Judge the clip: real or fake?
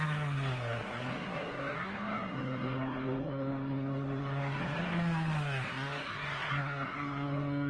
fake